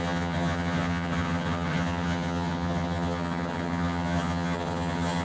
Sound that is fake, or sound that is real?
fake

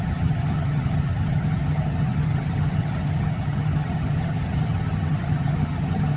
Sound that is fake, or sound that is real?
fake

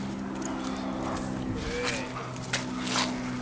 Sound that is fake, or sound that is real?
real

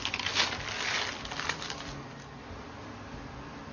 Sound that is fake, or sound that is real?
real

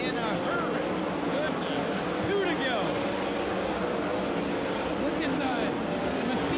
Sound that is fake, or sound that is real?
real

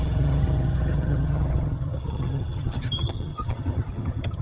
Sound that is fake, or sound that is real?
fake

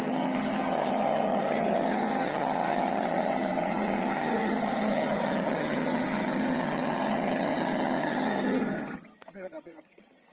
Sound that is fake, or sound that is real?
fake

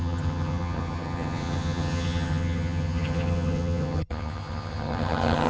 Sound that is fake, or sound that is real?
fake